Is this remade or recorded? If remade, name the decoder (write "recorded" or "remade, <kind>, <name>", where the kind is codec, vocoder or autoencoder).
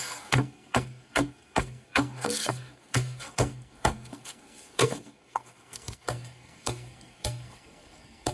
remade, codec, SNAC